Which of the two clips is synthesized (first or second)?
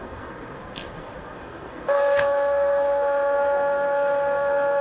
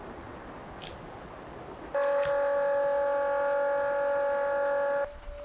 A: first